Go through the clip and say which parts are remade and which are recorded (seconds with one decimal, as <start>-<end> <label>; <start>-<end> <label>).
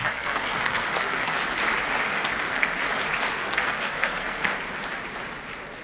0.0-1.4 remade; 1.4-2.0 recorded; 2.0-2.8 remade; 2.8-3.3 recorded; 3.3-4.5 remade; 4.5-5.8 recorded